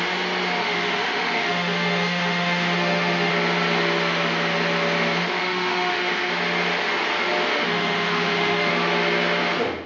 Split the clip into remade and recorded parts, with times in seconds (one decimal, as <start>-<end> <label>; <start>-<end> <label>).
0.0-0.6 recorded; 0.6-3.3 remade; 3.3-5.4 recorded; 5.4-6.3 remade; 6.3-7.5 recorded; 7.5-8.7 remade; 8.7-9.9 recorded